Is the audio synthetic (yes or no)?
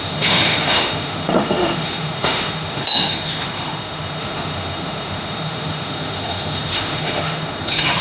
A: yes